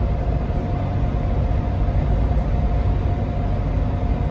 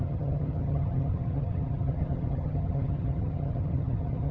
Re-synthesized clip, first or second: second